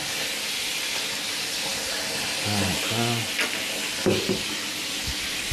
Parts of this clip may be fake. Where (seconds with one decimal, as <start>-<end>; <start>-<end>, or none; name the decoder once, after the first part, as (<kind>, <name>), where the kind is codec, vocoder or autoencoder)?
none